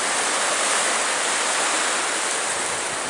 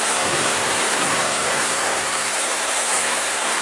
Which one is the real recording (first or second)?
first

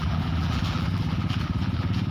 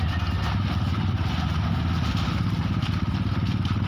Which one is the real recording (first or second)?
second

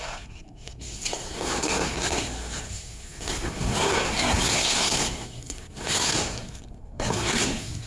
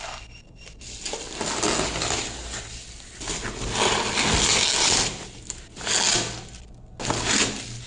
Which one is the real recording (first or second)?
second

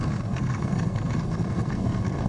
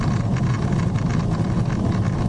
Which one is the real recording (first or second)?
second